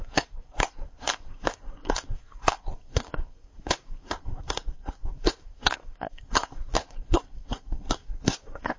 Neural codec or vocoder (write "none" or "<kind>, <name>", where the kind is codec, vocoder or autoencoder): codec, SNAC